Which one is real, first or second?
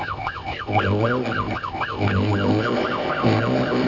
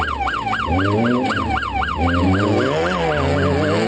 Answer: second